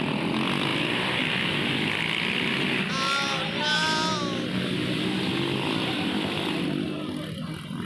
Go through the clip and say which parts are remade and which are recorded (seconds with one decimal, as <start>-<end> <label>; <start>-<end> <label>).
0.0-7.8 recorded